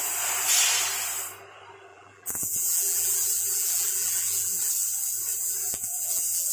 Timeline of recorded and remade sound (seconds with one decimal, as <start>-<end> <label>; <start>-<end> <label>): 0.0-1.9 recorded; 1.9-4.7 remade; 4.7-5.3 recorded; 5.3-6.5 remade